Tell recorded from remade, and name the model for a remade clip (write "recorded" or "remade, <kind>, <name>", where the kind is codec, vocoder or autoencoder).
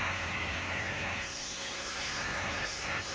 remade, codec, SNAC